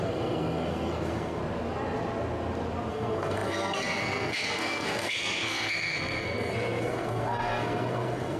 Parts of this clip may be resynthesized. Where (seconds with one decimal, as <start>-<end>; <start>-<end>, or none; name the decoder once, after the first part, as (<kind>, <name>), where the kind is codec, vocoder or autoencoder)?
0.0-1.4 (codec, SNAC); 2.9-8.4